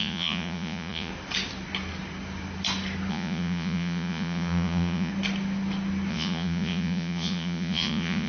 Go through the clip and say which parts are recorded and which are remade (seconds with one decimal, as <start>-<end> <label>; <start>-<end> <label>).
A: 0.0-1.1 remade; 1.1-3.1 recorded; 3.1-5.1 remade; 5.1-6.1 recorded; 6.1-8.3 remade